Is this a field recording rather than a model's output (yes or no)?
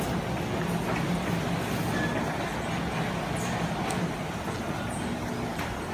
yes